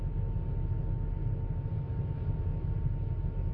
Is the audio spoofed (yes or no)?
no